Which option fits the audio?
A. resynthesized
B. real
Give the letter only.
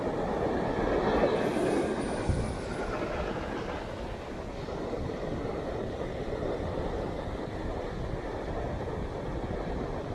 B